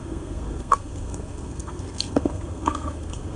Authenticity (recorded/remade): remade